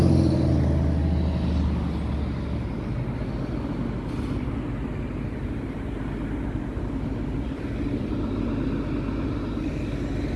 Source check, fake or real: real